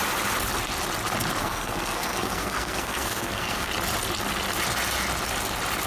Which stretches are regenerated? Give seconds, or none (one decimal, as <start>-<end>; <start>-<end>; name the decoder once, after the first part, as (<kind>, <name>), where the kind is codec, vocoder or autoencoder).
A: 1.4-3.7 (codec, SNAC)